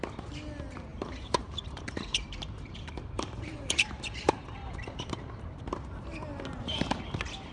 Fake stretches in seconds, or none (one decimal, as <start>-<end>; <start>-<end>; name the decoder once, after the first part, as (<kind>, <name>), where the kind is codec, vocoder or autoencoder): 0.9-5.4 (vocoder, BigVGAN v2)

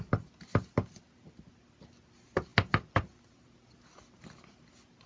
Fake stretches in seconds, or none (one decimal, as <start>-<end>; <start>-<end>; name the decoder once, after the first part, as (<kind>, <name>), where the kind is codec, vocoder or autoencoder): none